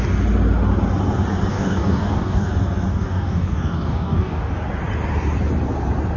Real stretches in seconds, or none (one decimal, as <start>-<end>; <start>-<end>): 0.0-1.5; 2.5-2.9; 4.5-6.2